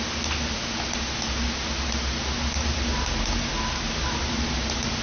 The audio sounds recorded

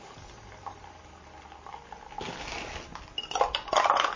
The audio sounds recorded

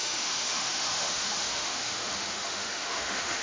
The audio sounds remade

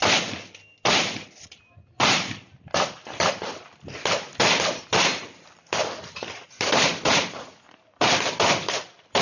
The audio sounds remade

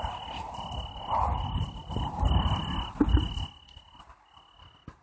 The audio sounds recorded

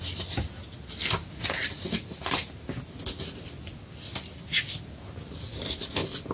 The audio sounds recorded